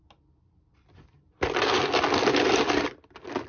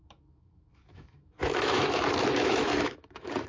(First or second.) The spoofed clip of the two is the second